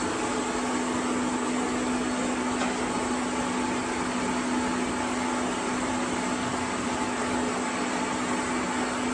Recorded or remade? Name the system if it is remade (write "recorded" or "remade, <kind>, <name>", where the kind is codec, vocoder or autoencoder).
recorded